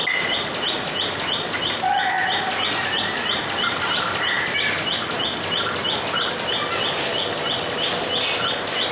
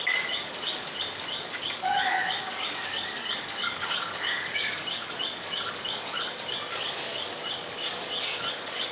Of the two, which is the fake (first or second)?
second